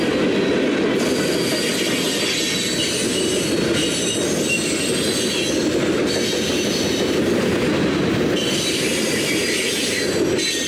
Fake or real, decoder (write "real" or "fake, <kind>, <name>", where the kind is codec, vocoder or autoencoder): real